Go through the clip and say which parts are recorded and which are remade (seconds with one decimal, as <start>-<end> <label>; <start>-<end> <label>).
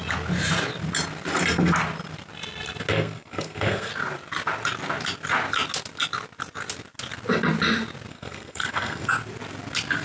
0.0-2.9 recorded; 2.9-3.9 remade; 3.9-8.1 recorded; 8.1-9.1 remade; 9.1-10.0 recorded